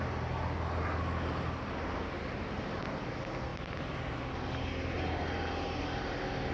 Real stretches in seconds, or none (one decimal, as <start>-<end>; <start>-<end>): 0.0-6.5

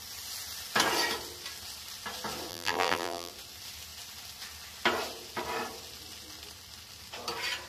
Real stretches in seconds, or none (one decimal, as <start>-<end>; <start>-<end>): 0.0-2.5; 3.3-7.7

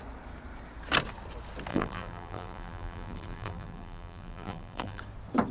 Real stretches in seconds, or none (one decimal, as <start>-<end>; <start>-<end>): 0.0-1.7; 5.0-5.5

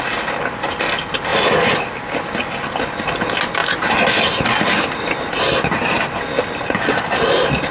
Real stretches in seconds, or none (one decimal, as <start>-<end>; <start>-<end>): 0.0-7.7

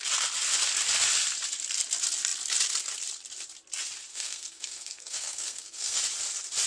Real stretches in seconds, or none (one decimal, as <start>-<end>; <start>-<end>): 0.0-4.1; 6.0-6.7

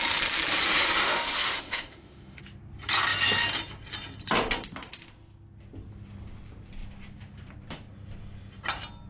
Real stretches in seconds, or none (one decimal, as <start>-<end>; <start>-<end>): 0.0-1.0; 2.4-9.1

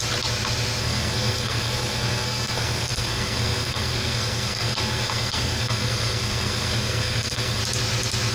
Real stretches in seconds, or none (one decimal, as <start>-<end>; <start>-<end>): 0.0-0.8; 7.6-8.3

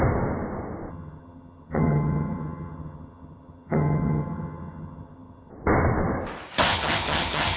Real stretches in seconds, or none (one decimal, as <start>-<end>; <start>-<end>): 0.0-0.9; 5.5-6.7